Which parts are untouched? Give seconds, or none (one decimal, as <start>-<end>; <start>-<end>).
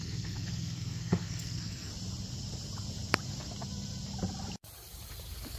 1.9-5.6